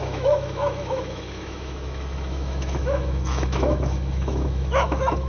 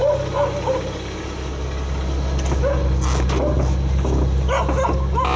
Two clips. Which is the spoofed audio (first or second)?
first